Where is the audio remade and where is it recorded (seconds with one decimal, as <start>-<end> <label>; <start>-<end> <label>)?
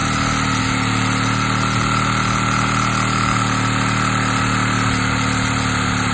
0.0-6.1 recorded